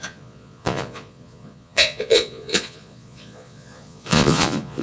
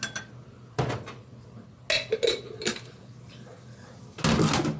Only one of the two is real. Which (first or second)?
second